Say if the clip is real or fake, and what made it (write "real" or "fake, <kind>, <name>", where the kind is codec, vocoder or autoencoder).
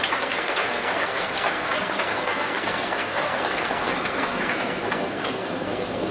fake, codec, SNAC